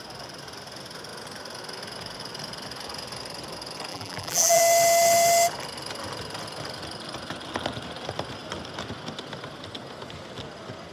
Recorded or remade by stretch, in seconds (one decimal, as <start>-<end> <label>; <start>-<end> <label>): 0.0-3.9 recorded; 3.9-4.6 remade; 4.6-10.9 recorded